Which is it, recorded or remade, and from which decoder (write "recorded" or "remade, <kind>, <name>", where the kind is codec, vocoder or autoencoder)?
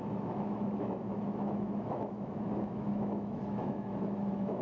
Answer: remade, autoencoder, DAC-VAE